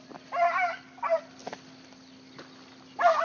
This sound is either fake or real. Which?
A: real